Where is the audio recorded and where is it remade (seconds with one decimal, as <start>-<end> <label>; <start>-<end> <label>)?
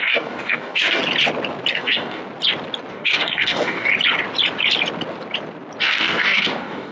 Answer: 0.0-1.0 remade; 1.0-1.7 recorded; 1.7-2.2 remade; 2.2-2.9 recorded; 2.9-3.9 remade; 3.9-5.8 recorded; 5.8-6.9 remade